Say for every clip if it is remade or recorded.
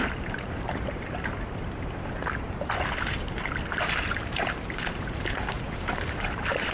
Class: remade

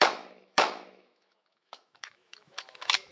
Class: remade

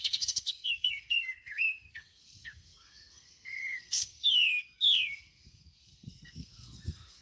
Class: remade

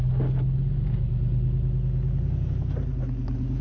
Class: recorded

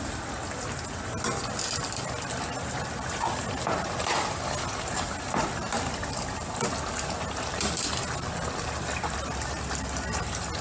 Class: recorded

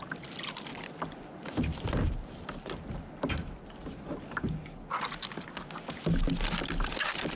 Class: recorded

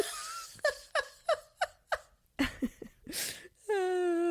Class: recorded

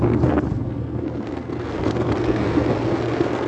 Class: remade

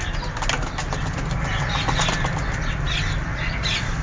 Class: recorded